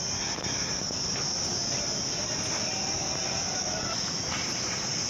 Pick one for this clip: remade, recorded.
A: recorded